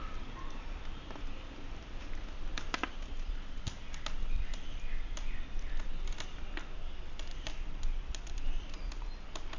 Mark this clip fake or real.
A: real